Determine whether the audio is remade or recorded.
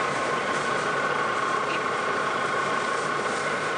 remade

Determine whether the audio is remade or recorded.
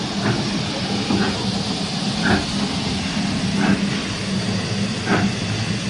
recorded